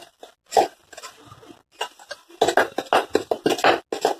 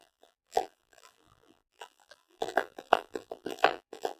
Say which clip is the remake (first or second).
second